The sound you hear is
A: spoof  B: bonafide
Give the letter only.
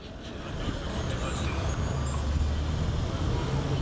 B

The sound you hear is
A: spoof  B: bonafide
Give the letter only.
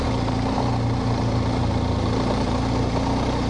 A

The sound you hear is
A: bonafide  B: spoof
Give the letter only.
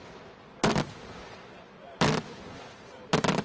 A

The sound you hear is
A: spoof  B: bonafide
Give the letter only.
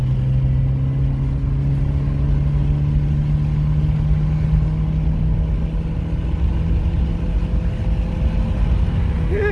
B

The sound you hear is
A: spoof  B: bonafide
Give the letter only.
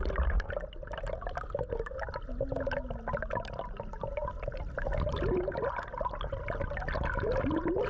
B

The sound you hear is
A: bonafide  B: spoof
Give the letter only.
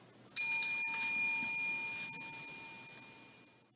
A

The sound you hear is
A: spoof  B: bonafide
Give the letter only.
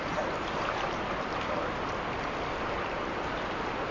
A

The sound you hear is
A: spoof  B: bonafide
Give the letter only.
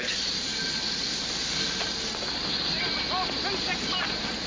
B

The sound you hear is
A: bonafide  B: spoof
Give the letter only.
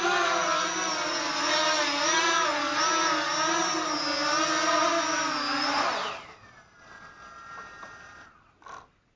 A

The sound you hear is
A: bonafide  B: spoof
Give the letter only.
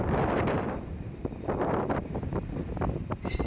B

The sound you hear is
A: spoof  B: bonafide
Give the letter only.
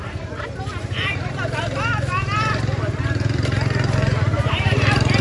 A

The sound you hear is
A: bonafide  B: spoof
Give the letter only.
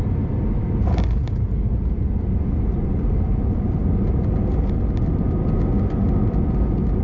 A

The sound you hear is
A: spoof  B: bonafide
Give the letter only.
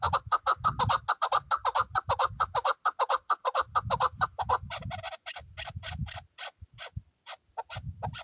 B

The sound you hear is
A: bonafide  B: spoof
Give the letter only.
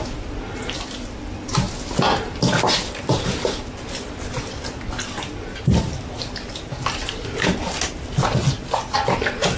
A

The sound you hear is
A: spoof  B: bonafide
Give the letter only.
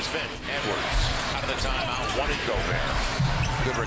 A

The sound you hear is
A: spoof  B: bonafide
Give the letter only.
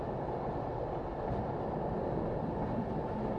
B